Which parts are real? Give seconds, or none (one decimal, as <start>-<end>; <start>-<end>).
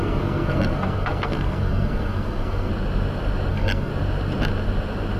2.7-3.5; 3.9-5.2